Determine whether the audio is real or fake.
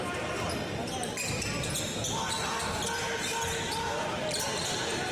real